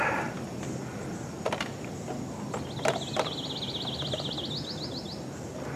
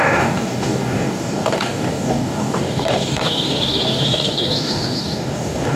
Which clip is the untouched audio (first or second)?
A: first